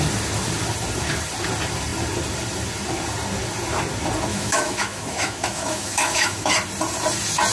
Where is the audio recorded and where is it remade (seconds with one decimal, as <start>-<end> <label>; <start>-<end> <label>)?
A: 0.0-4.3 recorded; 4.3-6.5 remade; 6.5-7.5 recorded